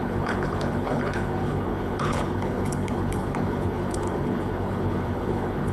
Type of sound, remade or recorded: remade